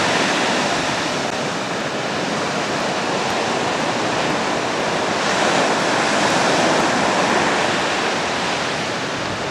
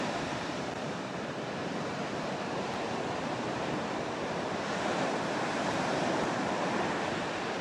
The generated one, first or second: second